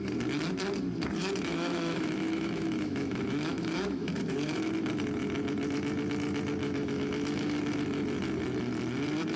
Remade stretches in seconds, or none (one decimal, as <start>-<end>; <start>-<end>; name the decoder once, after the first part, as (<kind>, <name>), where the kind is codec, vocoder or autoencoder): 1.2-4.7 (autoencoder, DAC-VAE); 6.6-7.6